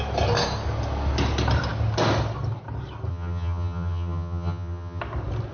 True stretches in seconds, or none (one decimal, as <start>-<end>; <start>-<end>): 0.0-3.1; 5.0-5.5